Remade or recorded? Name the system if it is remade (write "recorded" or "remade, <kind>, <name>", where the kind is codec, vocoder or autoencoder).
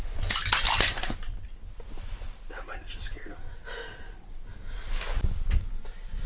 recorded